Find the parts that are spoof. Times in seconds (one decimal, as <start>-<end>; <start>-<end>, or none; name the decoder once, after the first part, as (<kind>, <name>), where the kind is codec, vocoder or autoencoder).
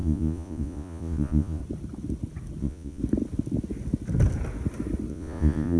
0.0-1.6 (vocoder, Vocos); 2.6-3.0; 5.1-5.8